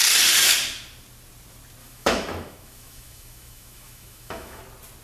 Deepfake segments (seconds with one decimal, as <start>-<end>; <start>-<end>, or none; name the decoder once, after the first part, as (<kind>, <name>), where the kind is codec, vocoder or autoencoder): 1.8-4.6 (autoencoder, DAC-VAE)